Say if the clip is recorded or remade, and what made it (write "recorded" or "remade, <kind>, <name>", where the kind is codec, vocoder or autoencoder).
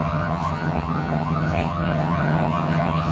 remade, vocoder, HiFi-GAN